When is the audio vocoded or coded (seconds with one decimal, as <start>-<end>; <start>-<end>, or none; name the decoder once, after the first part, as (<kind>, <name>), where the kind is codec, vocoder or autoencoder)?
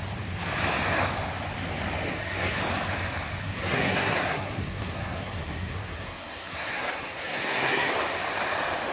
2.1-2.6 (codec, SNAC); 3.4-7.9